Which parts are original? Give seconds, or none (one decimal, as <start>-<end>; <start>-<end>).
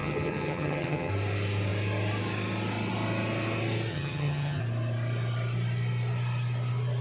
1.1-3.9; 4.6-7.0